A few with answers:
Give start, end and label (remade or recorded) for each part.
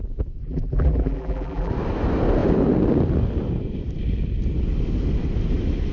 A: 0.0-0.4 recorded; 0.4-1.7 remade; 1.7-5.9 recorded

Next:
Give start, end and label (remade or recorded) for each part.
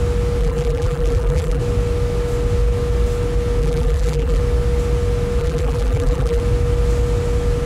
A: 0.0-0.4 recorded; 0.4-1.6 remade; 1.6-3.6 recorded; 3.6-4.4 remade; 4.4-5.4 recorded; 5.4-6.4 remade; 6.4-7.7 recorded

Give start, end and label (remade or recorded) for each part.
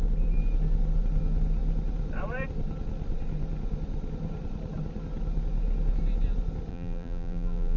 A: 0.0-6.7 recorded; 6.7-7.8 remade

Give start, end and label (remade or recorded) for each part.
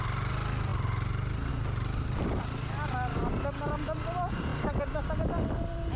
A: 0.0-6.0 recorded